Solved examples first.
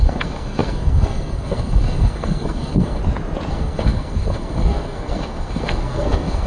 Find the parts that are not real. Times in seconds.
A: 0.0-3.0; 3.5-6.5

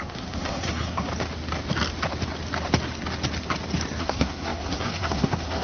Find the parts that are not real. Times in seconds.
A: 0.0-1.1; 4.0-5.6

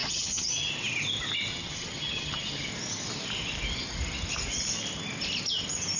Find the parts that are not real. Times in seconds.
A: 0.0-0.7; 1.5-2.7

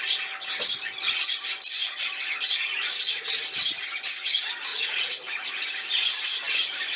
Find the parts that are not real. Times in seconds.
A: 4.7-5.6

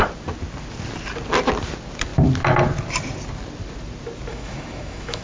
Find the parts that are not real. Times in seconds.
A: 4.3-5.2

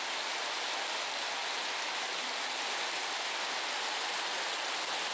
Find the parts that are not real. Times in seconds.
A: none